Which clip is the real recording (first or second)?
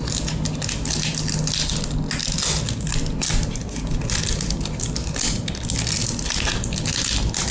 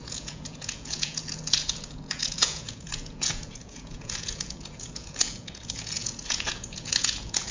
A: first